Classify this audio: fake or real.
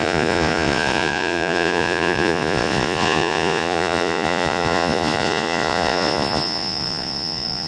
fake